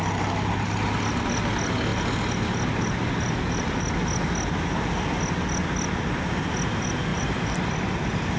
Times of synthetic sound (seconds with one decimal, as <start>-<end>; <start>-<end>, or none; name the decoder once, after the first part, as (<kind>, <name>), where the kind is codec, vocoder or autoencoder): 7.1-7.7 (vocoder, BigVGAN v2)